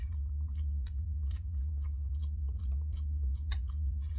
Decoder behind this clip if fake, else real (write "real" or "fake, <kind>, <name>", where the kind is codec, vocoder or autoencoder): fake, vocoder, Vocos